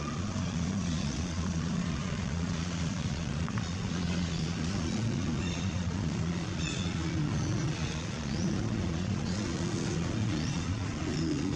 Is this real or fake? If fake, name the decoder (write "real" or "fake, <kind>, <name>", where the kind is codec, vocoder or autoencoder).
fake, vocoder, Vocos